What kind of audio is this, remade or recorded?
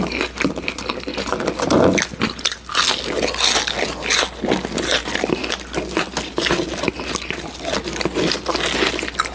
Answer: recorded